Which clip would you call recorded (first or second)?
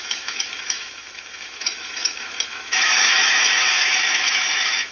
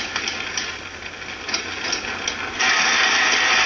second